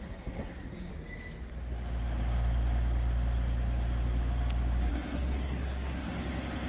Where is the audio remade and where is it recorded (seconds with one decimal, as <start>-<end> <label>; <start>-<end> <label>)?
0.0-0.9 remade; 0.9-4.9 recorded; 4.9-6.1 remade; 6.1-6.7 recorded

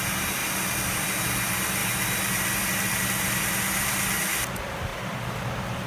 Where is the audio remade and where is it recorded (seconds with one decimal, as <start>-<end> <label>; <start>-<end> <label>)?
0.0-5.9 recorded

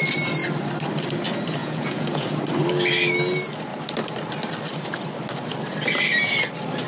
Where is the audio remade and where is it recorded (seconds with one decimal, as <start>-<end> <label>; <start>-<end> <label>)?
0.0-1.6 recorded; 1.6-2.4 remade; 2.4-6.9 recorded

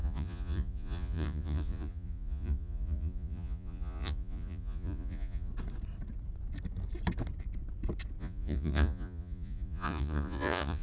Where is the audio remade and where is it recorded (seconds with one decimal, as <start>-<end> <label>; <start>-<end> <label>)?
0.0-5.5 remade; 5.5-8.2 recorded; 8.2-10.8 remade

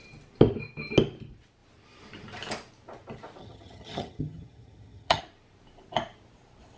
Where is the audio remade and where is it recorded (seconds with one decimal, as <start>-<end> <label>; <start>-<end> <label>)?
0.0-3.4 recorded; 3.4-5.2 remade; 5.2-6.8 recorded